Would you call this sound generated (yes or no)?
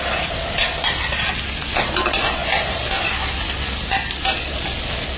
no